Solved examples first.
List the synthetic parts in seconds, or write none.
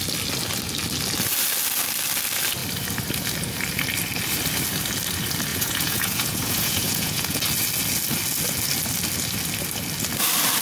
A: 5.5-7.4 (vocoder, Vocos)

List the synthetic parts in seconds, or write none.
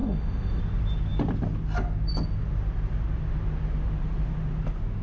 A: 0.0-0.6 (autoencoder, DAC-VAE)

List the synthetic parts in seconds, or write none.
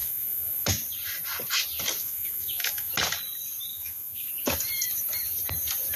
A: 0.0-0.7 (autoencoder, DAC-VAE); 2.0-2.9; 3.7-4.3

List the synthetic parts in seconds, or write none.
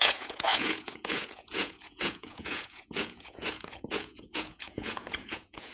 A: 0.0-5.7 (vocoder, Vocos)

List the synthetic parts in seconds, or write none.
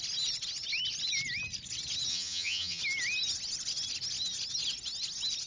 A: 2.1-2.8 (vocoder, HiFi-GAN)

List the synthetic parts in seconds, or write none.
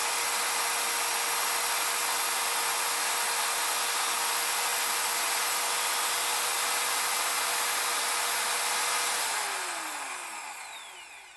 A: none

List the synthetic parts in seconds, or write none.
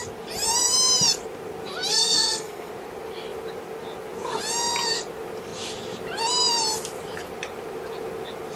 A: 1.9-2.7 (codec, SNAC)